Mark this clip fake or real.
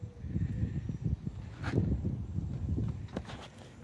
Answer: real